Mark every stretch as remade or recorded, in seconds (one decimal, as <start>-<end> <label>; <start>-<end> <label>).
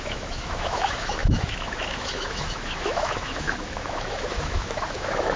0.0-5.4 remade